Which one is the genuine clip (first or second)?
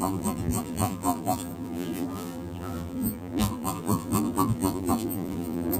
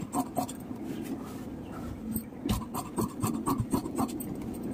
second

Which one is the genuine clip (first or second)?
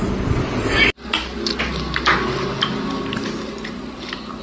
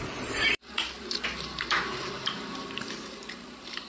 first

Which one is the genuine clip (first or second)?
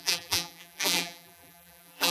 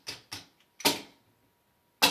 second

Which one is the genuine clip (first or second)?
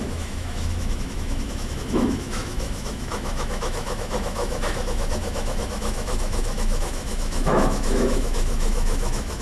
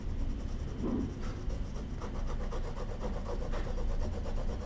second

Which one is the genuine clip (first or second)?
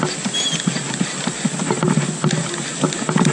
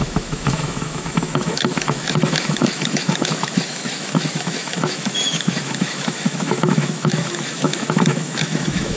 first